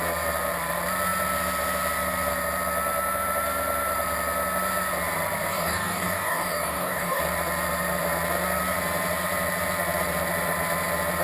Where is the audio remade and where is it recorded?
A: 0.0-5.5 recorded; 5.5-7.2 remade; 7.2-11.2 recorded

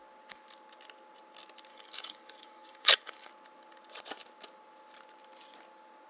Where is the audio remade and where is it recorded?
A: 0.0-1.7 recorded; 1.7-3.3 remade; 3.3-6.1 recorded

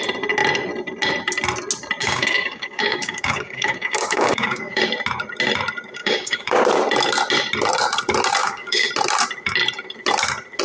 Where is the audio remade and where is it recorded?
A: 0.0-2.0 recorded; 2.0-4.8 remade; 4.8-6.0 recorded; 6.0-6.6 remade; 6.6-8.4 recorded; 8.4-8.9 remade; 8.9-10.6 recorded

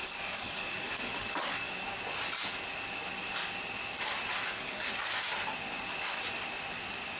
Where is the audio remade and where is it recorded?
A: 0.0-1.7 remade; 1.7-4.4 recorded; 4.4-4.9 remade; 4.9-7.2 recorded

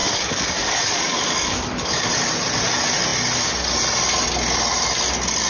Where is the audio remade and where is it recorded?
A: 0.0-2.1 remade; 2.1-5.5 recorded

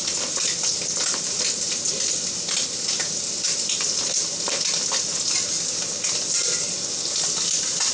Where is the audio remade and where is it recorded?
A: 0.0-7.9 recorded

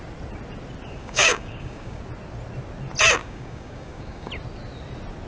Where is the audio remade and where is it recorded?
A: 0.0-1.0 recorded; 1.0-2.0 remade; 2.0-3.2 recorded; 3.2-4.3 remade; 4.3-5.3 recorded

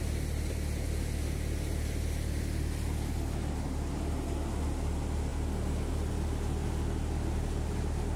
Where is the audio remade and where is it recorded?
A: 0.0-8.2 recorded